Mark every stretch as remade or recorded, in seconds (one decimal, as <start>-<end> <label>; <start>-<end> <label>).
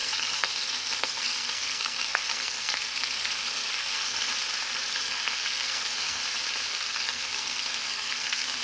0.0-4.3 remade; 4.3-4.9 recorded; 4.9-6.2 remade; 6.2-6.7 recorded; 6.7-8.6 remade